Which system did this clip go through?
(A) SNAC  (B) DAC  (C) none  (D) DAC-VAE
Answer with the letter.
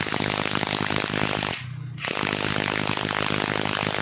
C